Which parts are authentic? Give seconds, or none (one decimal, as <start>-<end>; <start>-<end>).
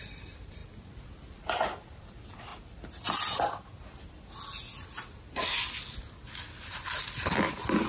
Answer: 0.0-7.9